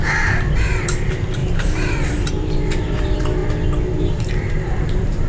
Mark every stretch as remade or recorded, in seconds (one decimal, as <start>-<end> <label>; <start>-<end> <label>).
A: 0.0-3.4 remade; 3.4-4.0 recorded; 4.0-5.3 remade